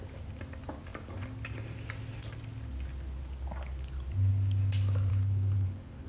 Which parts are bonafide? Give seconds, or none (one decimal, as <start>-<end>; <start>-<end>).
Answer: 0.0-5.1